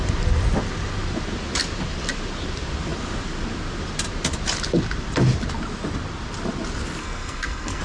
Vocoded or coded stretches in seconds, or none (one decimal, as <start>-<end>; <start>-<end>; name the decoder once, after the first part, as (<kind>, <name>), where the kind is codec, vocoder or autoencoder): 7.0-7.8 (codec, SNAC)